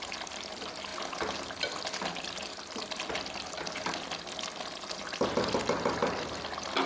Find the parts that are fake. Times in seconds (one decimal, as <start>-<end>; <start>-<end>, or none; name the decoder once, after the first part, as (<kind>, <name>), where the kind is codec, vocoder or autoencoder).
none